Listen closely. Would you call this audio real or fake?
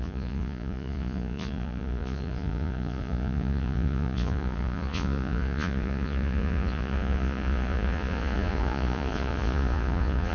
fake